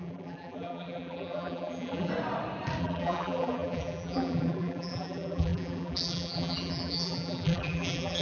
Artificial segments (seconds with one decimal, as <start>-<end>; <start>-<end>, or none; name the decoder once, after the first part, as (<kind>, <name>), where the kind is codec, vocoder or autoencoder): 0.0-2.1 (vocoder, BigVGAN v2); 2.8-8.2